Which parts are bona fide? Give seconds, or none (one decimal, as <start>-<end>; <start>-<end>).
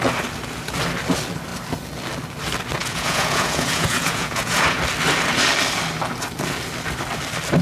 0.0-2.8; 4.8-7.6